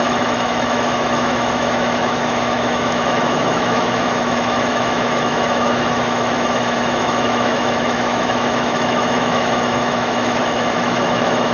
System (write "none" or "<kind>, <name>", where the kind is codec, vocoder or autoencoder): autoencoder, DAC-VAE